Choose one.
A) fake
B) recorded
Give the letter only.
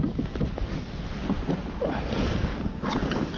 B